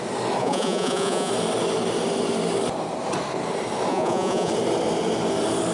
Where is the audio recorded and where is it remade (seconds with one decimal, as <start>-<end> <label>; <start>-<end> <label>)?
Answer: 0.0-0.4 recorded; 0.4-1.3 remade; 1.3-3.9 recorded; 3.9-4.5 remade; 4.5-5.7 recorded